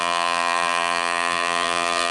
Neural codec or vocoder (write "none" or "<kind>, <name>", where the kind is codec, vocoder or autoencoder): vocoder, BigVGAN v2